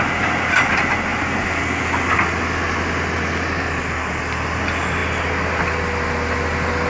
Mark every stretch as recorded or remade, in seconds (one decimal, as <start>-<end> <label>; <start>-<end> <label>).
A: 0.0-6.9 recorded